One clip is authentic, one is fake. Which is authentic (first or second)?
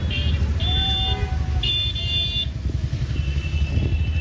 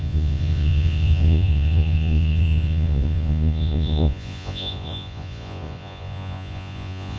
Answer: first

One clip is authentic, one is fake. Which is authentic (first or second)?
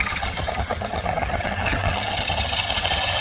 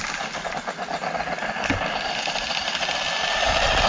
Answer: second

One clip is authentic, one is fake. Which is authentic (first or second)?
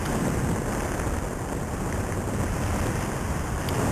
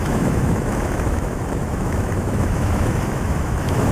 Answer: first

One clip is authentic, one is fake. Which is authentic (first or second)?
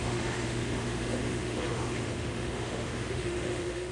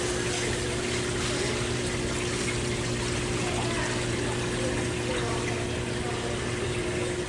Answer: second